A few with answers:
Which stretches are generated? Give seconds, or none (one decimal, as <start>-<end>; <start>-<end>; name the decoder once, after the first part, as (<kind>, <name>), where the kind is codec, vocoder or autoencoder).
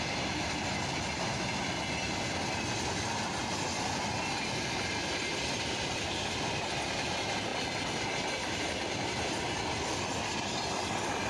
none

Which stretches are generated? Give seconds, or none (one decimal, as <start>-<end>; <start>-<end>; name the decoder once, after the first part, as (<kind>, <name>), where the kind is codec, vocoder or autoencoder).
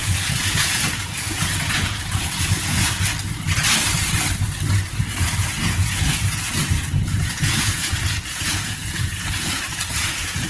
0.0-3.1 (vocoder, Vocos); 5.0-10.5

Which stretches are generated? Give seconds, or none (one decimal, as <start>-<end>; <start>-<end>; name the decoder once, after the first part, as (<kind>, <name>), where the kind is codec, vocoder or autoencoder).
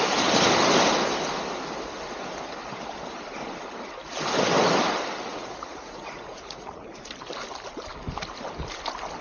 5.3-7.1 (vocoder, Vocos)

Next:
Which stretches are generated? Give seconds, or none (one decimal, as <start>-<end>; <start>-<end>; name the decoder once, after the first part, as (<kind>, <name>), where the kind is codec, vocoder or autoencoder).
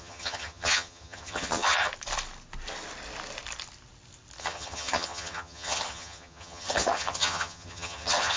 0.0-1.9 (vocoder, HiFi-GAN); 4.4-8.4